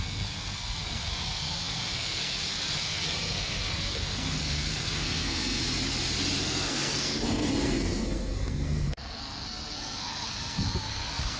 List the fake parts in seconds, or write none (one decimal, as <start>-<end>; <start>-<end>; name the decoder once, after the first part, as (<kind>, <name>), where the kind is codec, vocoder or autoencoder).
0.0-5.8 (codec, SNAC); 6.4-11.4